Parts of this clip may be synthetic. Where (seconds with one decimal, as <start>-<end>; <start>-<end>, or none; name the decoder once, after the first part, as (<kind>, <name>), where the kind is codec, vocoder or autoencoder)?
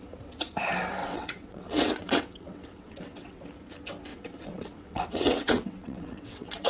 1.0-3.4 (vocoder, WaveNeXt); 4.1-6.7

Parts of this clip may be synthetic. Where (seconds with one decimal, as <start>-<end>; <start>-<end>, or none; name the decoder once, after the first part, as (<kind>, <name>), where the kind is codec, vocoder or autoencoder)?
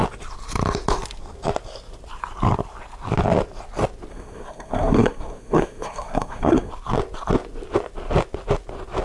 4.1-6.7 (codec, SNAC)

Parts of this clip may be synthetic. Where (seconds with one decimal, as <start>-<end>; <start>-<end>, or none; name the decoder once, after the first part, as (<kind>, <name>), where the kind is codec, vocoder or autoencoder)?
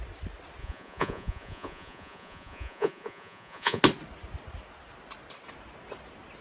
0.6-3.8 (vocoder, Vocos)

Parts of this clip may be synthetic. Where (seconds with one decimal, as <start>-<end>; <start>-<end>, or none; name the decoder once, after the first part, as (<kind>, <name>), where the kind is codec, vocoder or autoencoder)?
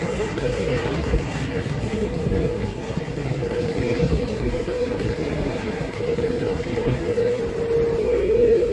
0.0-7.4 (codec, SNAC); 8.0-8.7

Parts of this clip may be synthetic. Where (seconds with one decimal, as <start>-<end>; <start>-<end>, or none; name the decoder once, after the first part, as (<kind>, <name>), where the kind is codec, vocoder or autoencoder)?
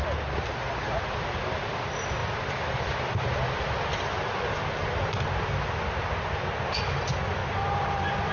7.4-8.3 (vocoder, BigVGAN v2)